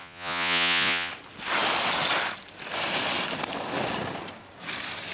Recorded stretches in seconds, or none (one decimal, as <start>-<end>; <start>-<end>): 1.1-5.1